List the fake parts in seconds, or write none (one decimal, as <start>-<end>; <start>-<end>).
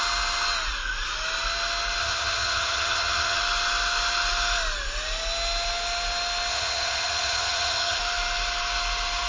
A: 2.0-3.4; 6.5-8.0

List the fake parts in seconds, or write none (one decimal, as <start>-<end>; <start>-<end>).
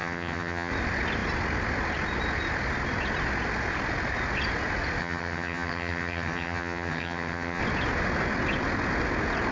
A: 0.0-0.7; 5.0-7.6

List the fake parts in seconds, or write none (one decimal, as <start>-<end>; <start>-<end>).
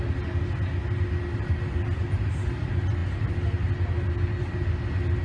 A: none